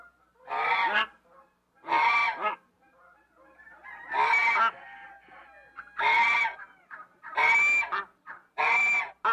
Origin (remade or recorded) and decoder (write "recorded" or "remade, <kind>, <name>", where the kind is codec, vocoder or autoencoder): recorded